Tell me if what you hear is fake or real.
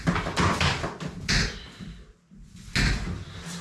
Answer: real